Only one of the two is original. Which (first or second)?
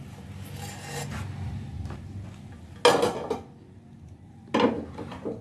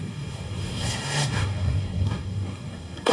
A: first